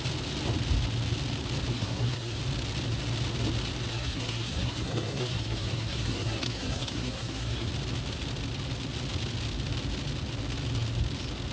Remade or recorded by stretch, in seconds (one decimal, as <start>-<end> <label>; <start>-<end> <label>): 0.0-1.7 recorded; 1.7-2.4 remade; 2.4-3.9 recorded; 3.9-7.7 remade; 7.7-11.5 recorded